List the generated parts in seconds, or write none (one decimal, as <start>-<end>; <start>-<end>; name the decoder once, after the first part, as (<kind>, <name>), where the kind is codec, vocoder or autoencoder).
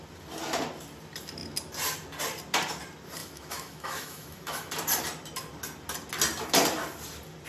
3.2-4.7 (autoencoder, DAC-VAE)